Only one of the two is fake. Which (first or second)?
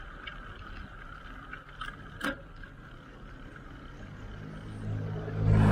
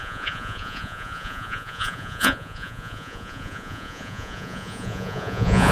second